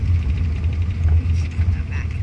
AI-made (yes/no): no